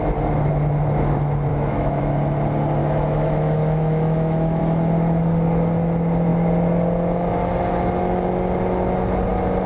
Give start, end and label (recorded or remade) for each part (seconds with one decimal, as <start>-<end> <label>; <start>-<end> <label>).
0.0-1.5 recorded; 1.5-2.0 remade; 2.0-2.8 recorded; 2.8-4.6 remade; 4.6-9.7 recorded